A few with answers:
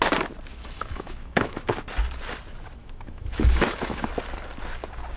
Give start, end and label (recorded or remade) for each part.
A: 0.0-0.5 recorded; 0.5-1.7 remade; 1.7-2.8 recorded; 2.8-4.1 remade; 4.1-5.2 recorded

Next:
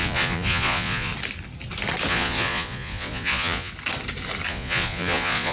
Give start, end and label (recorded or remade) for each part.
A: 0.0-1.1 remade; 1.1-2.1 recorded; 2.1-3.7 remade; 3.7-4.5 recorded; 4.5-5.5 remade

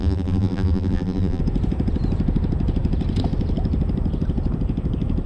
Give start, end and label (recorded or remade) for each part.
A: 0.0-1.4 remade; 1.4-5.3 recorded